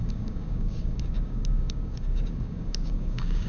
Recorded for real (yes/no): no